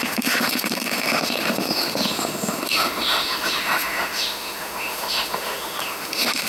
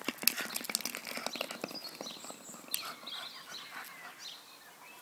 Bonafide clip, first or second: second